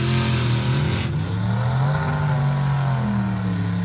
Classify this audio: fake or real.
real